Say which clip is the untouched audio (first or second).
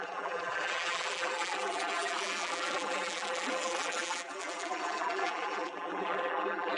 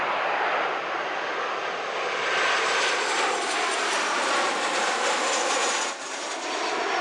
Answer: second